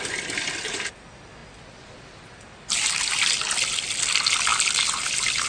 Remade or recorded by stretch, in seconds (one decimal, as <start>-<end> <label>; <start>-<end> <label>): 0.0-5.5 recorded